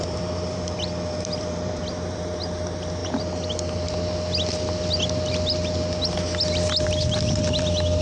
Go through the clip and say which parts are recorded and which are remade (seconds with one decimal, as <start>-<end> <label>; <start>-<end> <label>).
0.0-3.0 remade; 3.0-7.6 recorded; 7.6-8.0 remade